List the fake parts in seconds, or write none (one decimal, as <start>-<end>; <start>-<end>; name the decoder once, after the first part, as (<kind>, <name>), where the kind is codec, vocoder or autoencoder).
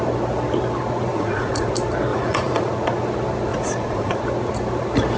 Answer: 1.1-1.7 (vocoder, Vocos); 2.1-2.7; 3.5-4.2